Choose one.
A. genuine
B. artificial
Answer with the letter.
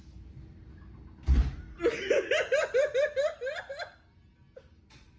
A